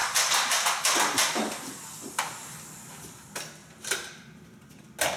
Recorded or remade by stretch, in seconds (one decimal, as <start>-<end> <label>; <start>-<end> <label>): 0.0-3.6 recorded; 3.6-4.7 remade; 4.7-5.2 recorded